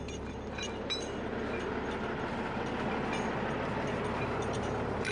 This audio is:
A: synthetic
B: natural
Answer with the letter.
B